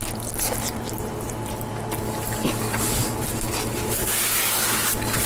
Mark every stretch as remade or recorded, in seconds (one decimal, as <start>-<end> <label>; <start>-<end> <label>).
0.0-5.3 recorded